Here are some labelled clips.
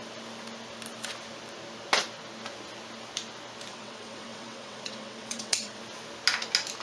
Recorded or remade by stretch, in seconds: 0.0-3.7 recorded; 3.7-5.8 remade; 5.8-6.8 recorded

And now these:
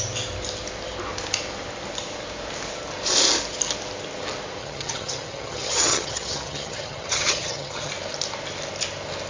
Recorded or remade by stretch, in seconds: 0.0-4.6 recorded; 4.6-7.9 remade; 7.9-9.3 recorded

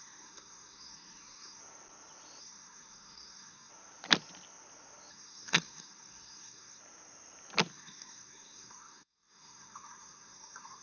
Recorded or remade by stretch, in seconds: 0.0-1.6 remade; 1.6-2.4 recorded; 2.4-3.7 remade; 3.7-5.1 recorded; 5.1-6.8 remade; 6.8-7.7 recorded; 7.7-10.8 remade